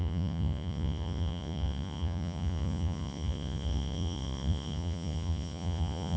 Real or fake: fake